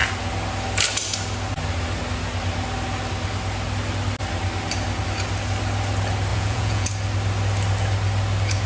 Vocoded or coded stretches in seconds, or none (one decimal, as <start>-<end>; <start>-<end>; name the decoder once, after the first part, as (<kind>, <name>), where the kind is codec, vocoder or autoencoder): 6.3-6.9 (vocoder, Vocos)